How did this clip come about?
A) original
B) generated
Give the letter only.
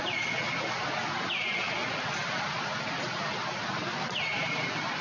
A